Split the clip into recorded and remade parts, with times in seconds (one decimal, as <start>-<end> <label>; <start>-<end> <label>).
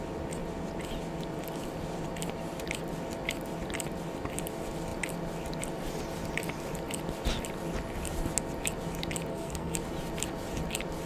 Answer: 0.0-9.3 recorded; 9.3-9.8 remade; 9.8-11.1 recorded